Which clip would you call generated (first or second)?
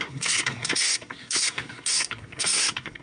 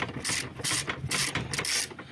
first